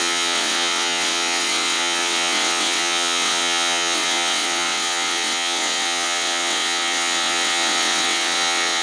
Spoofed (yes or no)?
yes